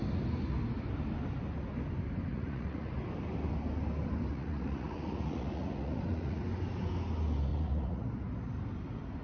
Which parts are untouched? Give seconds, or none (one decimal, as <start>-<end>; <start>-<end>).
0.0-2.3; 2.9-4.3; 6.4-7.5; 8.1-9.2